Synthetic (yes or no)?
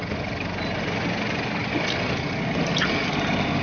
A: no